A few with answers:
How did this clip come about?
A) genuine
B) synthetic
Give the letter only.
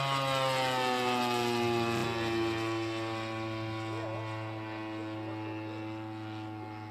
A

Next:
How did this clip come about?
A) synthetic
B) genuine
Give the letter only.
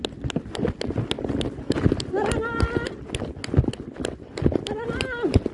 B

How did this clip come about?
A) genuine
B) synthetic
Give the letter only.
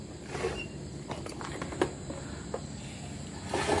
A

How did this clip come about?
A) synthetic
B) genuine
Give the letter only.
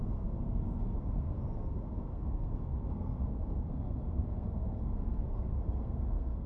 A